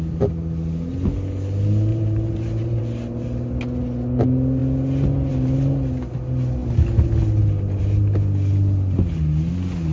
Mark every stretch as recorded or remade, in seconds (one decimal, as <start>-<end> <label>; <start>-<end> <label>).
0.0-1.9 recorded; 1.9-2.8 remade; 2.8-9.9 recorded